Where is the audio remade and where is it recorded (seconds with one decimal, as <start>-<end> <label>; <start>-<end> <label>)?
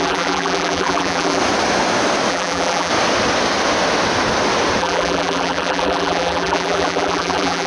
0.0-1.4 remade; 1.4-2.3 recorded; 2.3-2.9 remade; 2.9-4.8 recorded; 4.8-7.7 remade